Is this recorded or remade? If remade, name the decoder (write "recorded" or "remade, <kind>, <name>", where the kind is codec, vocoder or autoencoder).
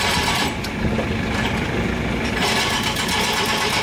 recorded